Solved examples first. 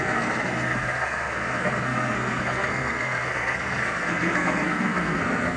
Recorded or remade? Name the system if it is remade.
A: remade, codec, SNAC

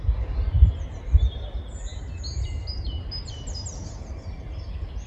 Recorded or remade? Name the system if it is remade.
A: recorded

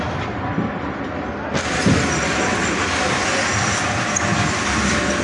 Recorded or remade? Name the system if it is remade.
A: recorded